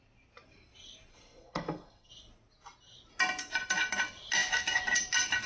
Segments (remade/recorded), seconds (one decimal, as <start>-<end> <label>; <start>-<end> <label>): 0.0-1.1 recorded; 1.1-2.1 remade; 2.1-5.5 recorded